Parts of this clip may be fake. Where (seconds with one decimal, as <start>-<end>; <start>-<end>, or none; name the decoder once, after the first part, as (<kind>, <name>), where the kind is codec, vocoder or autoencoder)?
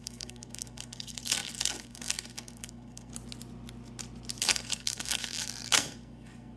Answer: 0.0-3.1 (codec, SNAC); 4.4-6.6